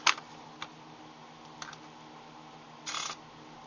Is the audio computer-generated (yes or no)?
no